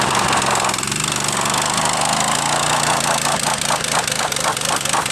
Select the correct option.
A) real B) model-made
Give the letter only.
A